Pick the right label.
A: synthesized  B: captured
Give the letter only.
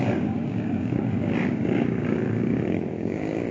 A